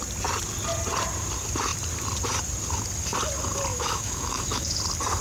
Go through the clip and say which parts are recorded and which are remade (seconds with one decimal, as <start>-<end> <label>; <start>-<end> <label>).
0.0-3.7 recorded; 3.7-4.8 remade; 4.8-5.2 recorded